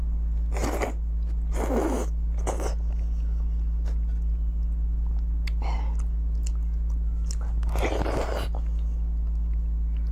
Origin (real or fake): real